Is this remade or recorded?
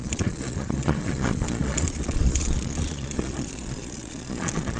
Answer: remade